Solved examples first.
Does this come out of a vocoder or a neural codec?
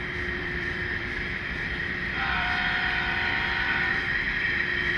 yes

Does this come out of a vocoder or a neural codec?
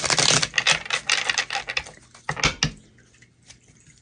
no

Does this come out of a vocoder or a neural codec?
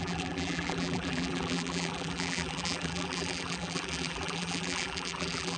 yes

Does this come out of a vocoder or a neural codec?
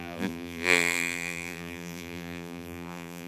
yes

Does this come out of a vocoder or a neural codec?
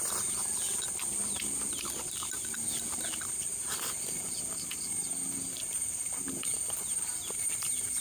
yes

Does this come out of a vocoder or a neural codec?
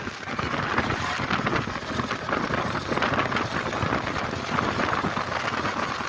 no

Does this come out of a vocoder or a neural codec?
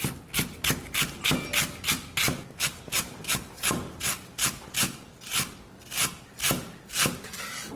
no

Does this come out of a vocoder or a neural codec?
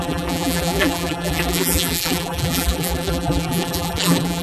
yes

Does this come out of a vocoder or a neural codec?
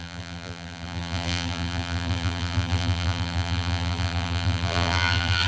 yes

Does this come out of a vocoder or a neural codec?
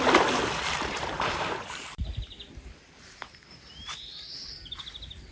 yes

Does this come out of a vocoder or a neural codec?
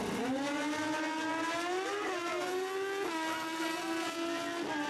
no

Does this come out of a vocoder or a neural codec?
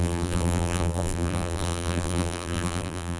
yes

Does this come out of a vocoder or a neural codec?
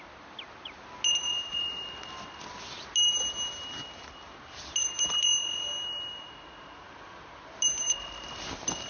no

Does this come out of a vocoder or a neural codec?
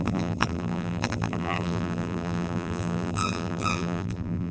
yes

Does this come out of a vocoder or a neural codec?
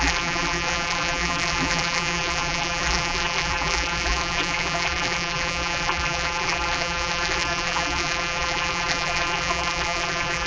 yes